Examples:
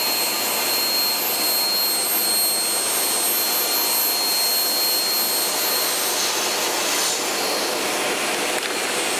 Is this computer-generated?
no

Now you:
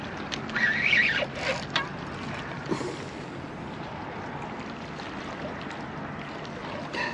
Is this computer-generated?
no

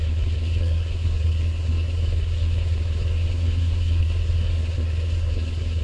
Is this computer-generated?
yes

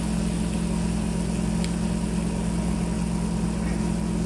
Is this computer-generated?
no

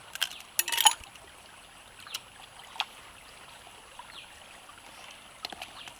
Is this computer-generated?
no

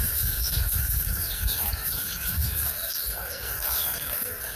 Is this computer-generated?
yes